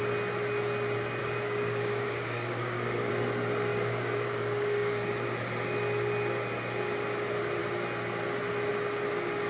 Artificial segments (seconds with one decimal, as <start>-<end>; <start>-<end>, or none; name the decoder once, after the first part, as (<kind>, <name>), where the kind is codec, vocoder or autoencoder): 1.2-3.1 (codec, DAC); 3.7-5.1